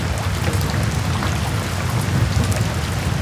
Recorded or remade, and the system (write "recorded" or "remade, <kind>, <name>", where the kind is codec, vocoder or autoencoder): recorded